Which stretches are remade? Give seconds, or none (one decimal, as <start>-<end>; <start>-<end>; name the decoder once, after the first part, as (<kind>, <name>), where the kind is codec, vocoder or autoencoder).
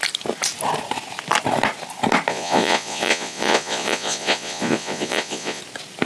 2.3-5.6 (vocoder, Vocos)